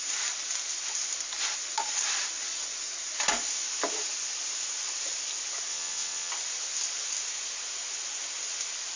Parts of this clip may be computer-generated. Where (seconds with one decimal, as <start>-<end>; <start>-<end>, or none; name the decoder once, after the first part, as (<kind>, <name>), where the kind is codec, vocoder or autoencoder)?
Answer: 5.7-6.3 (vocoder, WaveNeXt)